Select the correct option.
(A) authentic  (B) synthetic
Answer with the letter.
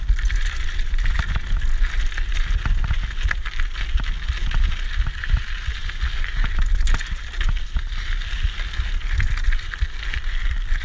A